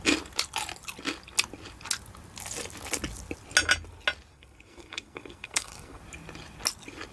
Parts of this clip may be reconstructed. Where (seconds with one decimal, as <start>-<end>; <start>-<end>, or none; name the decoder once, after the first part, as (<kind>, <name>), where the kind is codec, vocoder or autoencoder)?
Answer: 4.3-6.0 (codec, SNAC)